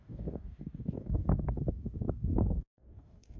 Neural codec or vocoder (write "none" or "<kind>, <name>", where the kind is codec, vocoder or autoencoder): codec, DAC